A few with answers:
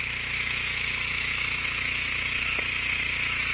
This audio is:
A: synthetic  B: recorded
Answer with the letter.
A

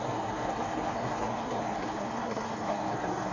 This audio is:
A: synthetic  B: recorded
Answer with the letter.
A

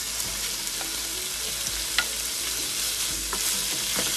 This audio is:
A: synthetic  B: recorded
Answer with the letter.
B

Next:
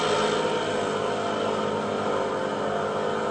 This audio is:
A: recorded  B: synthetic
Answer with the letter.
A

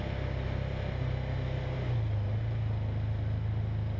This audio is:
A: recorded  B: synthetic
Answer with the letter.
A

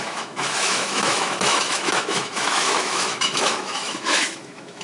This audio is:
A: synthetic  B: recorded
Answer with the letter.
A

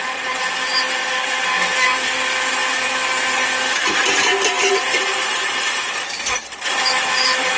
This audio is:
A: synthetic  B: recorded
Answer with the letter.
B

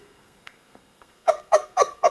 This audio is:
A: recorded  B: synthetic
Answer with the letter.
B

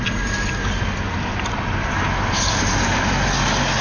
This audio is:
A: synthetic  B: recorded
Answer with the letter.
B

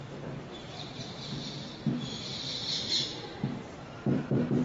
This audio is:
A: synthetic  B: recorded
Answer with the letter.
A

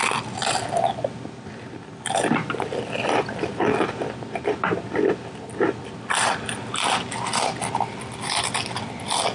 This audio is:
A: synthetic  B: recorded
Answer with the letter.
B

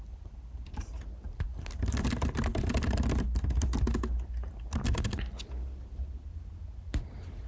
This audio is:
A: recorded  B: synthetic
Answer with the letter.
A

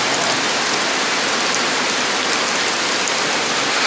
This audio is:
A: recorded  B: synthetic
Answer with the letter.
A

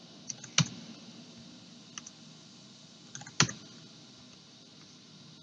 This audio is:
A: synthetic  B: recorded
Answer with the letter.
B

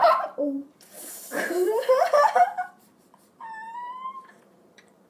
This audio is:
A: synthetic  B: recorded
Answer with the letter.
A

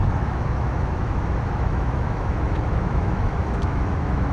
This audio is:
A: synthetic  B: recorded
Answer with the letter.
A